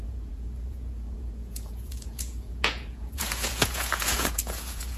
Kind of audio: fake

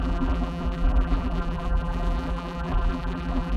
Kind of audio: fake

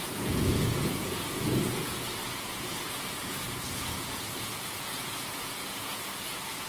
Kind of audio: fake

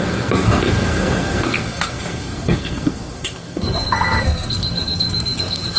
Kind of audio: fake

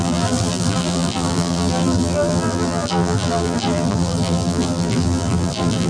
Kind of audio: fake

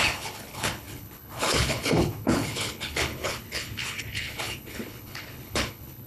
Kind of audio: fake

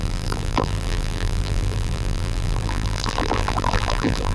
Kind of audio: fake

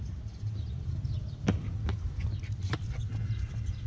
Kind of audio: real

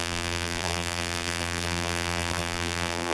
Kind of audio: fake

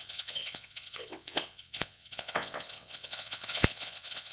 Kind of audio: fake